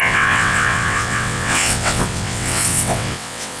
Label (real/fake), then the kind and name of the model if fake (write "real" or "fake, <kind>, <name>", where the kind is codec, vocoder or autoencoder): fake, vocoder, WaveNeXt